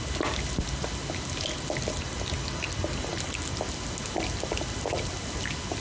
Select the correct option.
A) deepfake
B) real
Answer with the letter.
B